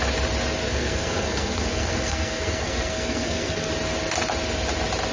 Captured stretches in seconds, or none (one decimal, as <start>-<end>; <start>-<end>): 0.0-0.6; 3.7-5.1